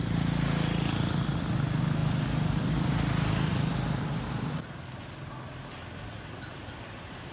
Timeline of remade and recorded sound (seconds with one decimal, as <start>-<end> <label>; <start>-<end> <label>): 0.0-3.5 recorded; 3.5-4.6 remade; 4.6-6.5 recorded; 6.5-7.3 remade